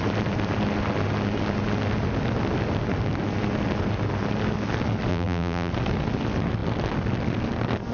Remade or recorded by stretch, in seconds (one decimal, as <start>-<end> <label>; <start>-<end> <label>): 0.0-5.1 recorded; 5.1-5.7 remade; 5.7-7.9 recorded

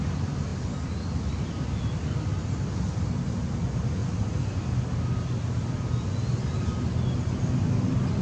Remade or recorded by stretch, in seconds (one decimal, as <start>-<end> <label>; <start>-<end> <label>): 0.0-0.5 recorded; 0.5-1.8 remade; 1.8-4.0 recorded; 4.0-5.0 remade; 5.0-8.2 recorded

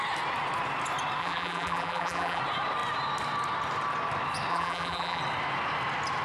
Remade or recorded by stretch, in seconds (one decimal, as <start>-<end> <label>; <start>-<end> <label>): 0.0-1.2 recorded; 1.2-2.4 remade; 2.4-4.5 recorded; 4.5-5.2 remade; 5.2-6.2 recorded

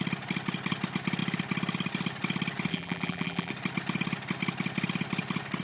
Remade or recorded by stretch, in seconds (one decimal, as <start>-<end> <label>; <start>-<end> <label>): 0.0-2.7 recorded; 2.7-3.5 remade; 3.5-5.6 recorded

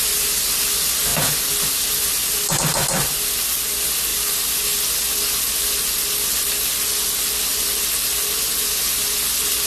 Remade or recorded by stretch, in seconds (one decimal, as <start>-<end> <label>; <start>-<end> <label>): 0.0-9.7 recorded

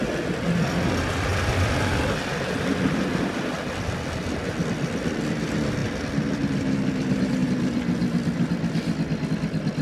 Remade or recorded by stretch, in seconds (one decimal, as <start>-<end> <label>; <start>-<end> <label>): 0.0-1.3 recorded; 1.3-3.4 remade; 3.4-9.8 recorded